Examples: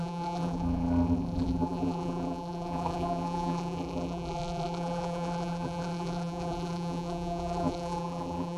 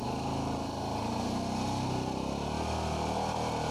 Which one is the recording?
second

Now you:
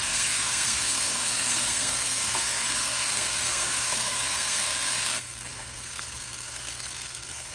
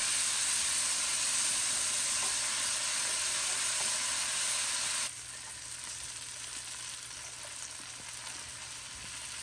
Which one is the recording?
second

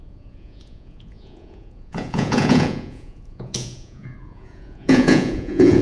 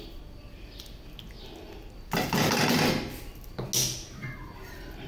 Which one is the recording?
second